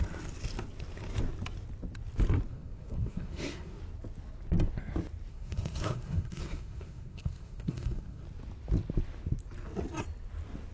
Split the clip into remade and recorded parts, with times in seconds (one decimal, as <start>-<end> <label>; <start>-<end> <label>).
0.0-2.5 recorded; 2.5-3.8 remade; 3.8-5.3 recorded; 5.3-8.2 remade; 8.2-10.7 recorded